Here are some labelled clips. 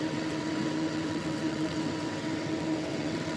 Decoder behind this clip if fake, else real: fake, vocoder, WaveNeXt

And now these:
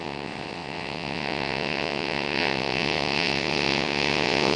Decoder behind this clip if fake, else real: fake, vocoder, WaveNeXt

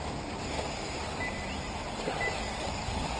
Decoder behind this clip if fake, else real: real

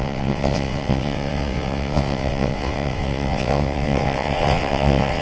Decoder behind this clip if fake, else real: fake, vocoder, WaveNeXt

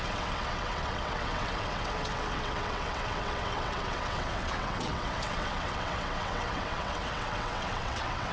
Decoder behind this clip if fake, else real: fake, vocoder, WaveNeXt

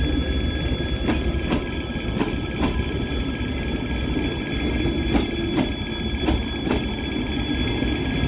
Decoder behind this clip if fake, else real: real